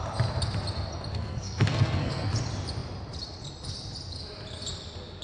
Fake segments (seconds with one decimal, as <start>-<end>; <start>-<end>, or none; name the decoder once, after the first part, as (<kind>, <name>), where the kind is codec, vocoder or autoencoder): 1.1-2.3 (codec, SNAC)